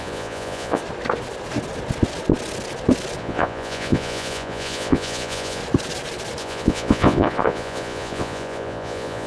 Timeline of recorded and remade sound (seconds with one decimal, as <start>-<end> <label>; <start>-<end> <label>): 0.0-0.8 remade; 0.8-3.2 recorded; 3.2-5.6 remade; 5.6-6.4 recorded; 6.4-9.3 remade